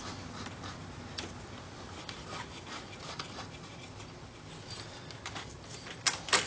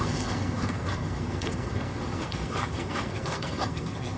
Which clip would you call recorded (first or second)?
first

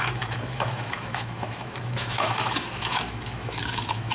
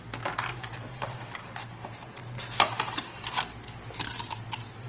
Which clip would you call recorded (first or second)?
second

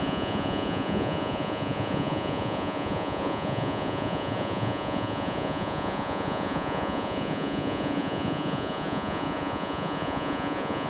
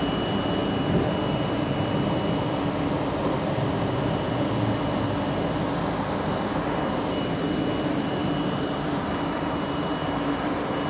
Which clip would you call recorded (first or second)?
second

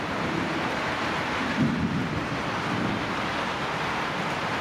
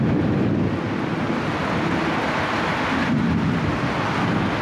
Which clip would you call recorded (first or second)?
second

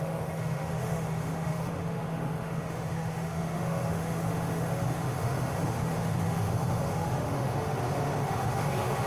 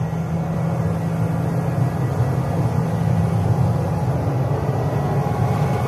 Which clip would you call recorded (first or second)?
second